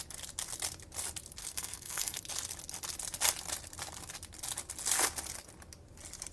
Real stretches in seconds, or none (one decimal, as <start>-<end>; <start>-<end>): 0.0-1.4; 2.2-6.3

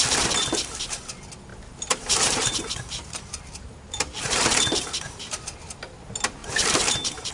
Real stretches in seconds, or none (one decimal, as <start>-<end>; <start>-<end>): 0.0-1.5; 5.4-6.4

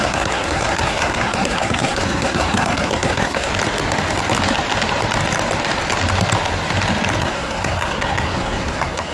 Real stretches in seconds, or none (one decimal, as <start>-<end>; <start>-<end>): 3.5-7.2

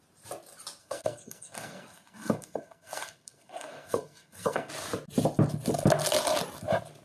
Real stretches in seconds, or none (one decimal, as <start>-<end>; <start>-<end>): 0.0-0.8; 4.7-7.0

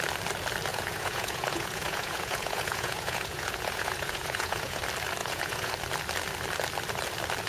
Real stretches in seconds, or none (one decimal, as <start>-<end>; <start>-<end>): 0.0-0.7; 4.8-5.2; 5.7-7.5

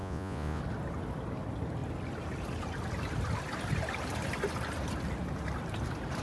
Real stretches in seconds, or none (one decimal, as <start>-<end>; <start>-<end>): 0.6-6.2

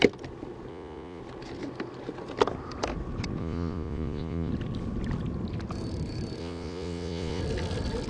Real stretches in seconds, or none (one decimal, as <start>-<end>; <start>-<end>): 0.0-0.7; 1.2-3.4; 4.5-6.4; 7.4-8.1

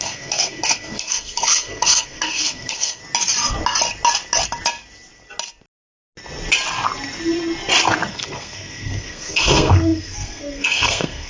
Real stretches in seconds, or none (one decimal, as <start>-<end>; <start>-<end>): 3.0-8.1